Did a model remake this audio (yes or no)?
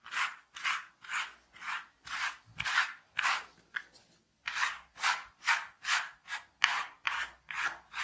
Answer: no